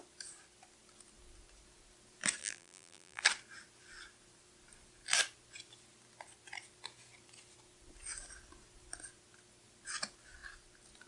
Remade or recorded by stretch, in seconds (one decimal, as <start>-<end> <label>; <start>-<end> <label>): 0.0-2.4 recorded; 2.4-3.2 remade; 3.2-11.1 recorded